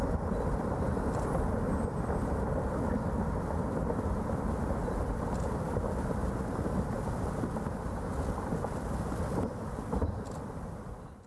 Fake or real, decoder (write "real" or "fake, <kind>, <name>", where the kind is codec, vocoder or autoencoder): real